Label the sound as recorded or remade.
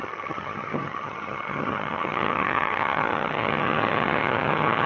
remade